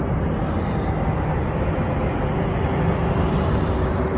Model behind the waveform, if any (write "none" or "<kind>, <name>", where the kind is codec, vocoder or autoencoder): none